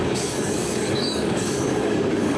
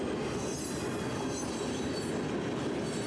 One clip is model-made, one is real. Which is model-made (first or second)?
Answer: first